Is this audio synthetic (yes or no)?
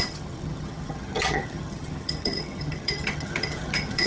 yes